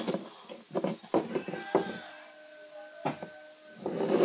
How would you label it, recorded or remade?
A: recorded